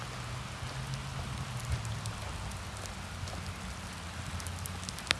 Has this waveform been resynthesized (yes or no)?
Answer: no